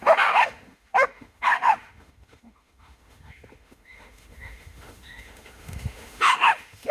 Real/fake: fake